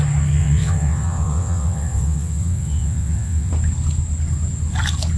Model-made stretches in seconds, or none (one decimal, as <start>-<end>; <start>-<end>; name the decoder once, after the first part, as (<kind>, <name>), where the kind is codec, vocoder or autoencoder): 0.4-3.5 (vocoder, WaveNeXt)